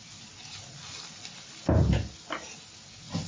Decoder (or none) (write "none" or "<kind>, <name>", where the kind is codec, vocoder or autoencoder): none